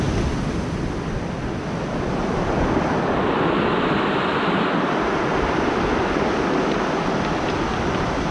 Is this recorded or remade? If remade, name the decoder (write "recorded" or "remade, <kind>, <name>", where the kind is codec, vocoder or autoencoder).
recorded